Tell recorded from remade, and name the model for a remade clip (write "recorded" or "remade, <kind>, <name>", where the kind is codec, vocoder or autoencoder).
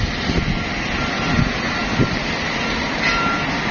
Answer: recorded